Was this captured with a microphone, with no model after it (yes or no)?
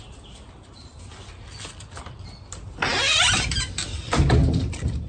yes